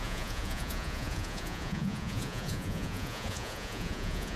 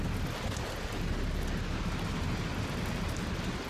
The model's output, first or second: first